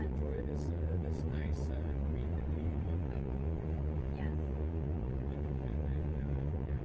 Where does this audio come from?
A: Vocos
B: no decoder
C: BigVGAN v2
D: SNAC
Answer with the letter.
A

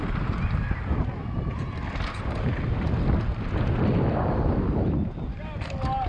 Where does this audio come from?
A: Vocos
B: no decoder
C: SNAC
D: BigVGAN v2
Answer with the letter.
B